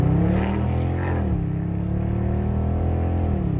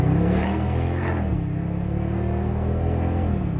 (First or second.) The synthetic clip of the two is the second